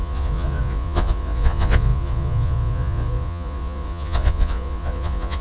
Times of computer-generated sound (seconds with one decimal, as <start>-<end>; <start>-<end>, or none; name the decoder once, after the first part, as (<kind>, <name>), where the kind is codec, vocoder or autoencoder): 0.0-5.4 (vocoder, Vocos)